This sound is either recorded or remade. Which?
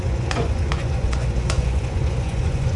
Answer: remade